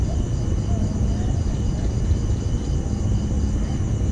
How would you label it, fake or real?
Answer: real